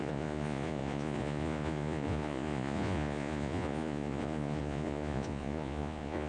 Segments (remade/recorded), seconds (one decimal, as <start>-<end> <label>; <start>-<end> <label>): 0.0-6.3 remade